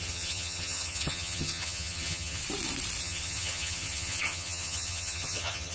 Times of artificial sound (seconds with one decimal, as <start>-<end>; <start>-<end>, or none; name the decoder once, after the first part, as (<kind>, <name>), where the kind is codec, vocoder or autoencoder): 0.0-2.4 (vocoder, HiFi-GAN); 3.0-5.7